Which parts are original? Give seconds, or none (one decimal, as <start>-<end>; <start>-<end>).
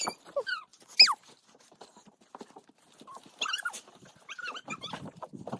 0.0-5.6